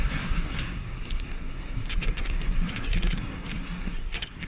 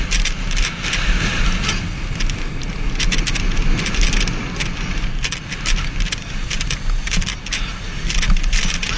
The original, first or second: second